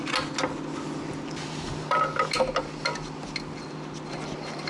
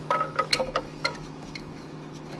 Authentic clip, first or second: first